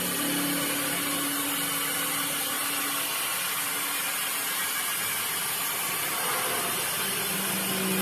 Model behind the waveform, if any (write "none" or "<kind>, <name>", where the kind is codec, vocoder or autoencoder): none